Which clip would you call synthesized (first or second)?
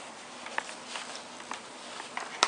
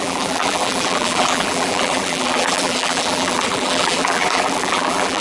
second